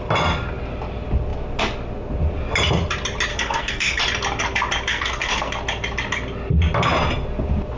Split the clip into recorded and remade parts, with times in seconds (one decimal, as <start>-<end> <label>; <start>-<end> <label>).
0.0-3.3 recorded; 3.3-4.0 remade; 4.0-4.9 recorded; 4.9-5.5 remade; 5.5-7.8 recorded